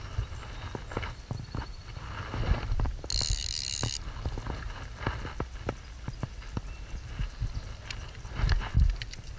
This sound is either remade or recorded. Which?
recorded